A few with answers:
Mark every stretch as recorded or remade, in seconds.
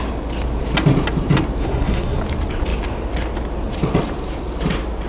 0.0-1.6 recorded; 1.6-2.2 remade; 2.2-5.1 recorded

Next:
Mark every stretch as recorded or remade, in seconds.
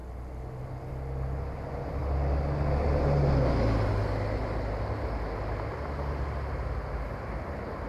0.0-7.9 recorded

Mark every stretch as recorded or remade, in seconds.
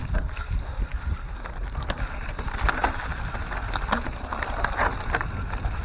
0.0-5.8 recorded